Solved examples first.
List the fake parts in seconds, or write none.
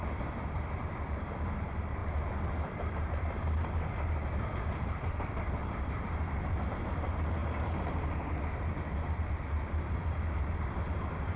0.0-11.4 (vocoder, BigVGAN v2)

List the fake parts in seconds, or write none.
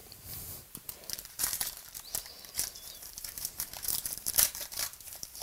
0.0-5.4 (vocoder, BigVGAN v2)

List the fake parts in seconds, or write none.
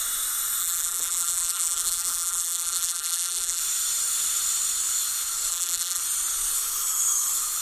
0.6-3.6 (vocoder, BigVGAN v2); 5.5-6.0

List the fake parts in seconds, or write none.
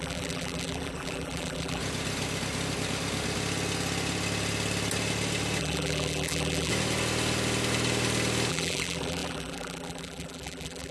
0.0-1.8 (vocoder, BigVGAN v2); 5.6-6.7; 8.5-10.9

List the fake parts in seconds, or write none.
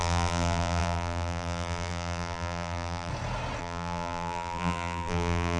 0.0-3.1 (vocoder, BigVGAN v2); 3.6-5.6